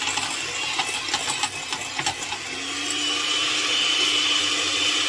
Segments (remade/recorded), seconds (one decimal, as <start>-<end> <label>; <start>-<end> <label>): 0.0-4.2 recorded; 4.2-5.1 remade